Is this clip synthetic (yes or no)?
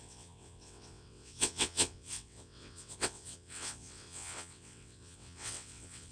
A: yes